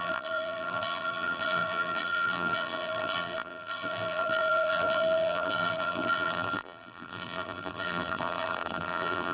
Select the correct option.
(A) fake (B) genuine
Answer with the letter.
A